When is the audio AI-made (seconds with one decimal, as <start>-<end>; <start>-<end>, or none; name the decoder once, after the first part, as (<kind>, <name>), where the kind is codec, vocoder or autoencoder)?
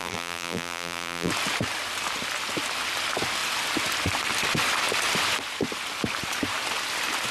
0.0-1.3 (vocoder, BigVGAN v2)